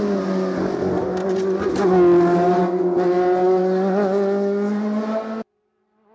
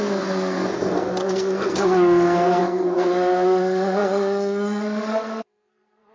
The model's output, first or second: second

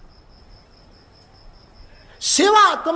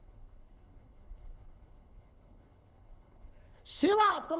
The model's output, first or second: second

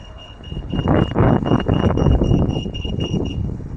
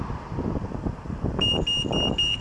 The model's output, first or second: first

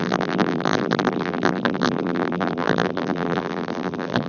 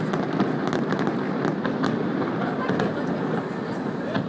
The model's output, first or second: first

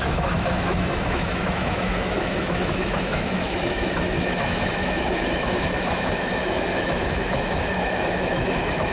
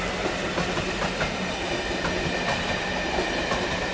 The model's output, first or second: first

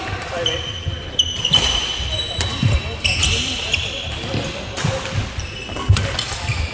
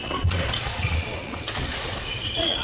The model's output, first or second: second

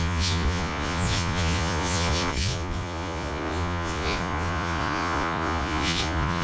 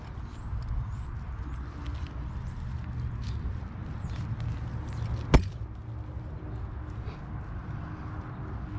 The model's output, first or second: first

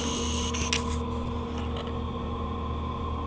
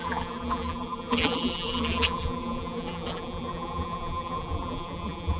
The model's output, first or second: second